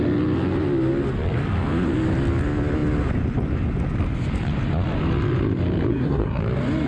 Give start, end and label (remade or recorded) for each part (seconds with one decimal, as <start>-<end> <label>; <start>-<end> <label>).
0.0-5.9 recorded; 5.9-6.4 remade; 6.4-6.9 recorded

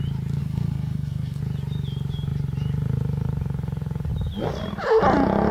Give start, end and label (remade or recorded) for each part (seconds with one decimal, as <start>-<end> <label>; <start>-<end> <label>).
0.0-0.4 recorded; 0.4-1.4 remade; 1.4-5.5 recorded

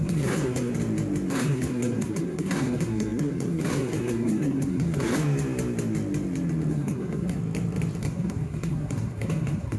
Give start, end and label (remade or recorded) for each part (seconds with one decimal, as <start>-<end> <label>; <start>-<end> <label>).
0.0-0.7 remade; 0.7-1.3 recorded; 1.3-5.1 remade; 5.1-6.7 recorded; 6.7-7.4 remade; 7.4-8.0 recorded; 8.0-9.8 remade

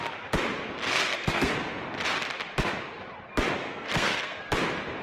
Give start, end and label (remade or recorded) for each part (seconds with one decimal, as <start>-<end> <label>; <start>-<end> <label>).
0.0-0.9 recorded; 0.9-1.5 remade; 1.5-3.6 recorded; 3.6-4.4 remade; 4.4-5.0 recorded